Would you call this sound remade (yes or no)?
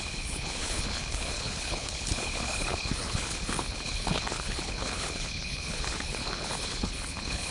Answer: yes